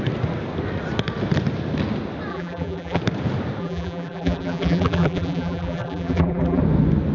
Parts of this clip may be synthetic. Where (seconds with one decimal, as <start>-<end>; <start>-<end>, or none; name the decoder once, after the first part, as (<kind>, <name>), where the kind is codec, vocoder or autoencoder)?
2.3-3.0 (vocoder, BigVGAN v2); 3.6-6.6